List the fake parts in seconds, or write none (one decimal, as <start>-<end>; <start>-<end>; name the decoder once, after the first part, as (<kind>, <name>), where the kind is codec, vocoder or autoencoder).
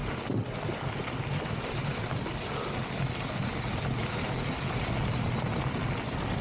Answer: 0.0-2.5 (vocoder, BigVGAN v2)